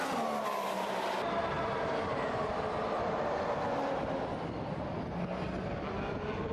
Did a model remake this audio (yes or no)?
no